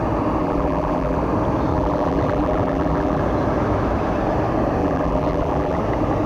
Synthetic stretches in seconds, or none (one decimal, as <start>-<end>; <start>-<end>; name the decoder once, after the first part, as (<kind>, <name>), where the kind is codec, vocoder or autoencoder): 0.4-1.2 (vocoder, BigVGAN v2); 1.7-3.2; 4.8-5.8